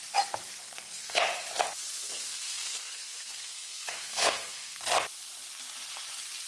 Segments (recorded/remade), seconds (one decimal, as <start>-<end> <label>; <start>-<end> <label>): 0.0-0.5 recorded; 0.5-1.2 remade; 1.2-2.0 recorded; 2.0-4.8 remade; 4.8-6.5 recorded